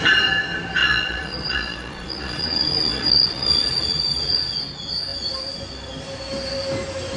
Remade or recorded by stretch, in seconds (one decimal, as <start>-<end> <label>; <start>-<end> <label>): 0.0-0.8 recorded; 0.8-4.6 remade; 4.6-7.2 recorded